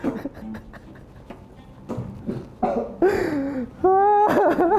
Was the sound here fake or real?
real